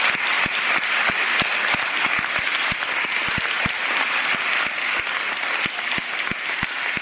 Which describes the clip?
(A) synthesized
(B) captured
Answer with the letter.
B